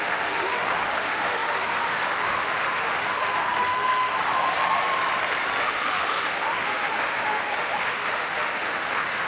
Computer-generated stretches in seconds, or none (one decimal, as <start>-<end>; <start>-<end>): 0.0-4.8; 5.6-9.3